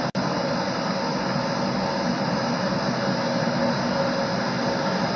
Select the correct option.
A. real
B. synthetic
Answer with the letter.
A